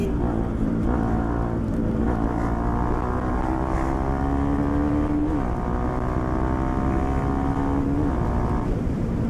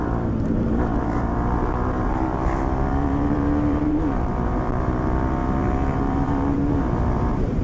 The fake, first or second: second